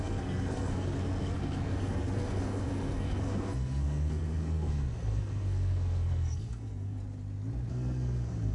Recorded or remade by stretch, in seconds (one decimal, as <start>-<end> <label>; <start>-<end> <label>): 0.0-7.0 remade; 7.0-7.7 recorded; 7.7-8.5 remade